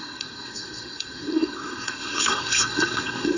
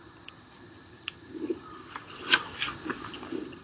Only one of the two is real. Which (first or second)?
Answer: second